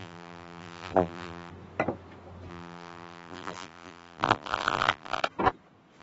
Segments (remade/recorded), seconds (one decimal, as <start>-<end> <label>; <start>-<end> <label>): 0.0-1.5 remade; 1.5-2.5 recorded; 2.5-5.2 remade; 5.2-6.0 recorded